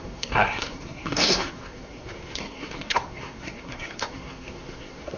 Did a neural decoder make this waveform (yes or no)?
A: yes